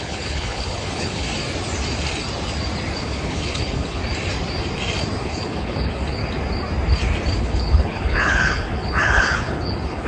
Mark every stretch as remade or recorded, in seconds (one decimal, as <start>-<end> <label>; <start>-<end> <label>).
0.0-1.3 remade; 1.3-3.0 recorded; 3.0-4.0 remade; 4.0-5.2 recorded; 5.2-6.2 remade; 6.2-7.4 recorded; 7.4-10.1 remade